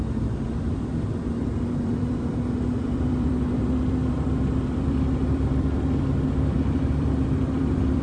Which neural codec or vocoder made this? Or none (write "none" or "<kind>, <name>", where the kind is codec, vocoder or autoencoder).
vocoder, BigVGAN v2